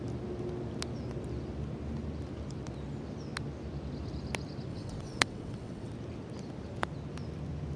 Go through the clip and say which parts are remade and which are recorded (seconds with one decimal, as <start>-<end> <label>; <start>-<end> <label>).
0.0-4.7 recorded; 4.7-5.9 remade; 5.9-7.8 recorded